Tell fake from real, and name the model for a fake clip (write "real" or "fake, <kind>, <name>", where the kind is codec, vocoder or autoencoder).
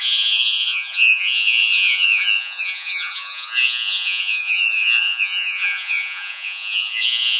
fake, vocoder, Vocos